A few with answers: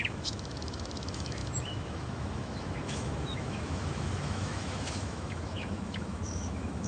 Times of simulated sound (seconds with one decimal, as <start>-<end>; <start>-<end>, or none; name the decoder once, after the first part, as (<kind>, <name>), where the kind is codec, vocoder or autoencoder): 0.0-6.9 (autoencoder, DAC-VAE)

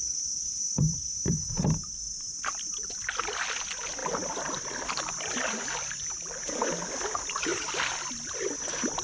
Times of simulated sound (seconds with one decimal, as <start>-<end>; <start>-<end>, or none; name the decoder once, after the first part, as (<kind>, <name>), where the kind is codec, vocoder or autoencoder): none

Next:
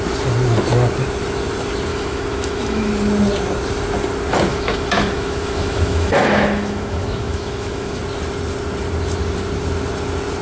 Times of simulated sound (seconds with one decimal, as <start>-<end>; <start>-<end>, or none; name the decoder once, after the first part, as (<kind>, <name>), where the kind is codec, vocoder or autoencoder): 1.9-2.9 (autoencoder, DAC-VAE); 4.5-8.0